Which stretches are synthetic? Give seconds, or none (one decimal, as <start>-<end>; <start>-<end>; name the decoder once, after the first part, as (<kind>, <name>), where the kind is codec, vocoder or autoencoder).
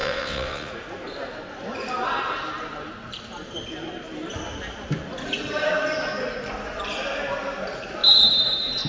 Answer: 0.0-0.7 (vocoder, WaveNeXt)